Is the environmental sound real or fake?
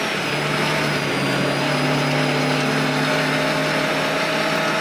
real